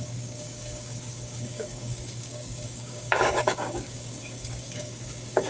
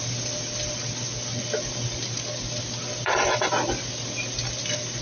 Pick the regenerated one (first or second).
first